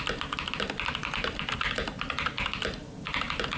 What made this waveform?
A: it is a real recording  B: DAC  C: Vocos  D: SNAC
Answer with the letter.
A